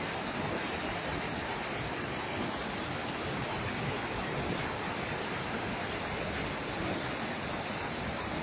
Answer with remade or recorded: recorded